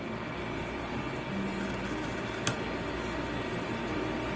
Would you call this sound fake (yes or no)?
no